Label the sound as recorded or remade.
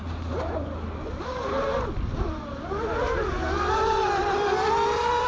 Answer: recorded